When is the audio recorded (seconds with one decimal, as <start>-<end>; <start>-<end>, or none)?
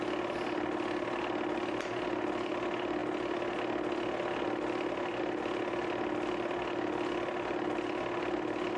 0.0-8.8